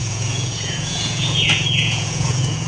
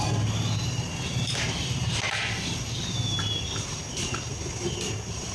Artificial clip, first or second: first